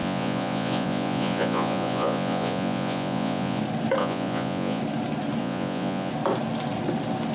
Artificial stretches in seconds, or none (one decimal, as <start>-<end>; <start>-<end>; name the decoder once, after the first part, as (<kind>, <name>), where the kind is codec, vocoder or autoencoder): 0.0-3.6 (vocoder, Vocos); 4.0-4.8; 5.4-6.1

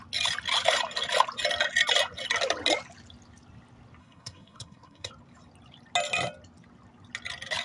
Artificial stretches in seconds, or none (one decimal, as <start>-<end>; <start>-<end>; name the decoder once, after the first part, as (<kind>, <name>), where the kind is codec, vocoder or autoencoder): 4.0-5.1 (codec, SNAC)

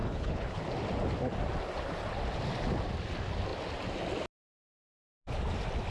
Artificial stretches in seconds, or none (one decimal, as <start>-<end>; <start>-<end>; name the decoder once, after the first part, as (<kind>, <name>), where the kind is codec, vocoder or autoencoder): 0.0-0.6 (codec, HILCodec)

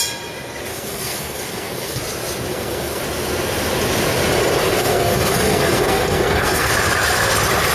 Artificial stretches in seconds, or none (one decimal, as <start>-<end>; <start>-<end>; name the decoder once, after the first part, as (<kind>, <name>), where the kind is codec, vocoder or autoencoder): 0.7-2.0 (codec, SNAC); 2.5-3.0; 4.6-6.7

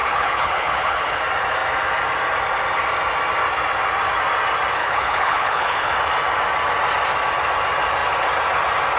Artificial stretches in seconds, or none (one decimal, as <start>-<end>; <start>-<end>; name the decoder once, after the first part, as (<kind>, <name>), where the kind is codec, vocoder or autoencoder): 0.0-1.2 (codec, HILCodec); 4.8-5.9

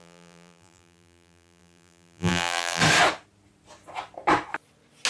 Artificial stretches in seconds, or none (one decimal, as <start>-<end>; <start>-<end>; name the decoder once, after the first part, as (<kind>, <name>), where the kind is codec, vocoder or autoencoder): 0.0-2.8 (vocoder, BigVGAN v2)

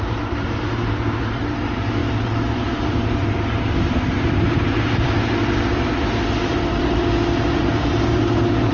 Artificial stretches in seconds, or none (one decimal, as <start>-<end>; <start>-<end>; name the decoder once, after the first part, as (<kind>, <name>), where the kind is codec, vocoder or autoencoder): 0.0-7.0 (vocoder, BigVGAN v2); 7.6-8.7